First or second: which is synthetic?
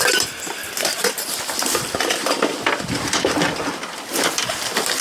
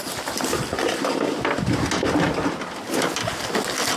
first